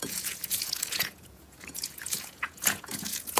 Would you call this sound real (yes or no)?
no